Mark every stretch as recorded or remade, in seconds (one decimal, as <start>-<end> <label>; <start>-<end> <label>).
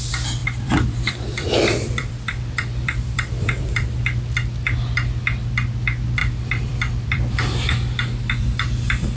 0.0-0.4 recorded; 0.4-3.6 remade; 3.6-6.2 recorded; 6.2-7.3 remade; 7.3-9.2 recorded